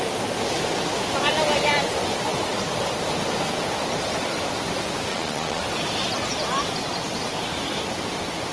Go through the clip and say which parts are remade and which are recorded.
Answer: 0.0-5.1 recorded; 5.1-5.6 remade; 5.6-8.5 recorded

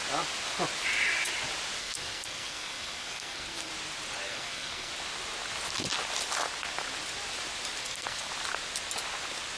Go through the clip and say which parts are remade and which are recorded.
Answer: 0.0-1.8 recorded; 1.8-3.7 remade; 3.7-4.3 recorded; 4.3-4.9 remade; 4.9-7.8 recorded; 7.8-8.3 remade; 8.3-9.6 recorded

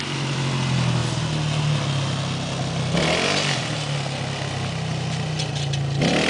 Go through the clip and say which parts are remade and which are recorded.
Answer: 0.0-6.3 recorded

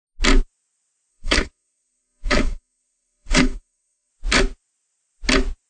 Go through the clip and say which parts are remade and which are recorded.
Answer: 0.0-1.1 recorded; 1.1-4.1 remade; 4.1-5.7 recorded

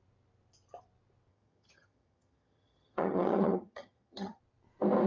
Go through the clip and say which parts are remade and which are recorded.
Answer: 0.0-1.3 recorded; 1.3-4.4 remade; 4.4-5.1 recorded

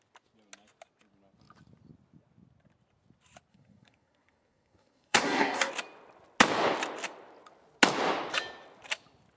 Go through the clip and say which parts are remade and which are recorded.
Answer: 0.0-3.5 recorded; 3.5-5.7 remade; 5.7-9.4 recorded